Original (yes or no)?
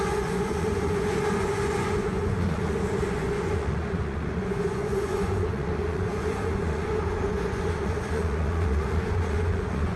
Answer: no